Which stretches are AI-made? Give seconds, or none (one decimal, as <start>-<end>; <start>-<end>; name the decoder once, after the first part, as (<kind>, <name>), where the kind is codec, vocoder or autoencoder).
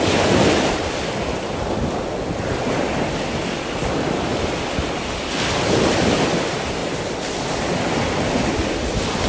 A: none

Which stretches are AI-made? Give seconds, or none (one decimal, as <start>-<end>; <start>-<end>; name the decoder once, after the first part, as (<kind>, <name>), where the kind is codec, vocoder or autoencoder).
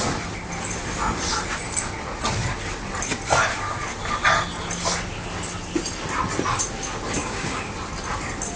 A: 7.2-7.7 (codec, DAC)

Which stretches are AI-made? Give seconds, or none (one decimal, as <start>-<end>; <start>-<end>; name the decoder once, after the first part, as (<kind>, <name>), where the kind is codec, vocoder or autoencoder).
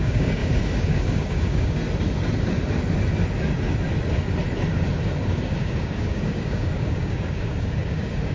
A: 0.0-1.8 (codec, DAC); 5.3-8.3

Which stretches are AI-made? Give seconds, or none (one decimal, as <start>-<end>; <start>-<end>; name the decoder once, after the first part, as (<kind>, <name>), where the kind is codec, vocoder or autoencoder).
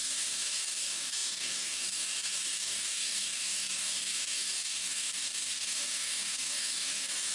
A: 0.0-7.3 (codec, DAC)